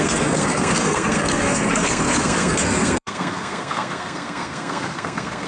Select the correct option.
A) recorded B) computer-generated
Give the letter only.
B